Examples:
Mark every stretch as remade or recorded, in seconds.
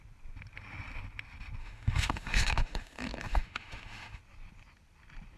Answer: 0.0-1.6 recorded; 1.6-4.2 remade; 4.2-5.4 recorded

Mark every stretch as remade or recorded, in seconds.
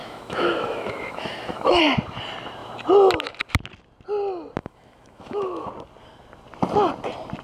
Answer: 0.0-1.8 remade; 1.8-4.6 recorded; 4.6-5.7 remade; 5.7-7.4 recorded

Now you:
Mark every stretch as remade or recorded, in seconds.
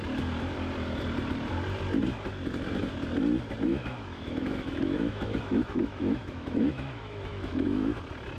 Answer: 0.0-3.7 recorded; 3.7-8.0 remade; 8.0-8.4 recorded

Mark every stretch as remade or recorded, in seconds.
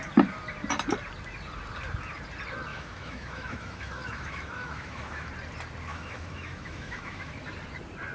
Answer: 0.0-2.7 recorded; 2.7-5.3 remade; 5.3-5.9 recorded; 5.9-7.3 remade; 7.3-8.1 recorded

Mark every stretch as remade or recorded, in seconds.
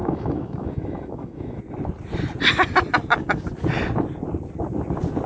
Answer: 0.0-1.6 remade; 1.6-5.3 recorded